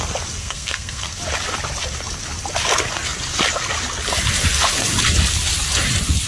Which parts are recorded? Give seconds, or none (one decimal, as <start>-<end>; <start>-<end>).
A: 0.0-0.4; 1.2-6.3